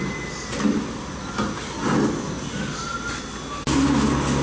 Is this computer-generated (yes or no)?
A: no